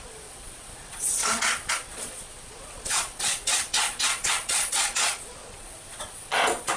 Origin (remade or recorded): remade